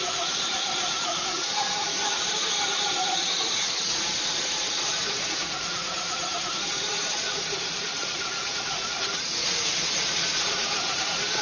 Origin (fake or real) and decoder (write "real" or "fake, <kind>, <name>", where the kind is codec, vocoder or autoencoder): fake, vocoder, Vocos